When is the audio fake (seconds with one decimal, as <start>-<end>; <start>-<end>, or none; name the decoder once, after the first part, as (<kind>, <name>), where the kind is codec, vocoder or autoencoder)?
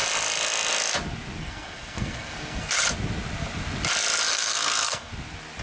1.4-2.7 (codec, SNAC); 4.3-5.1